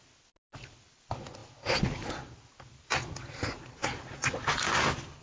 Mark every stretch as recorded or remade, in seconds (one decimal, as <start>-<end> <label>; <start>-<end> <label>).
0.0-5.2 recorded